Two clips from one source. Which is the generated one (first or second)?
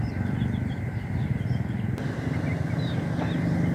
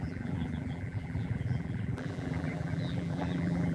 second